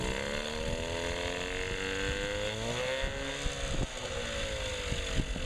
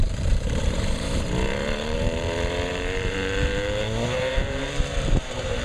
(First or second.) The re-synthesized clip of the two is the second